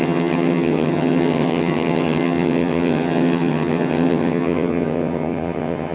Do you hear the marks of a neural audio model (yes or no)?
yes